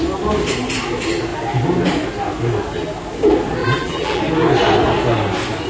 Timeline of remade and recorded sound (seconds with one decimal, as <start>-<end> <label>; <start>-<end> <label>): 0.0-3.6 recorded; 3.6-4.2 remade; 4.2-5.7 recorded